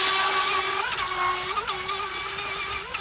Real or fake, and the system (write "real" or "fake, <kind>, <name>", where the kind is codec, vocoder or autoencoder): real